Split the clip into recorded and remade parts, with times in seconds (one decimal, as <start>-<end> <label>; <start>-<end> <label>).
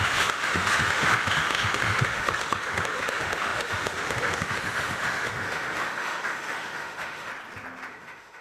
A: 0.0-7.3 remade; 7.3-7.9 recorded; 7.9-8.4 remade